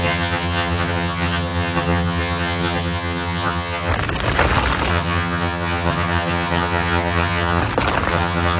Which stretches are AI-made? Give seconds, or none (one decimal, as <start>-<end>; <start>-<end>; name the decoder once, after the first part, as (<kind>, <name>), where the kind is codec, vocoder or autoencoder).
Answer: 0.0-3.9 (vocoder, HiFi-GAN); 4.9-7.6; 8.1-8.6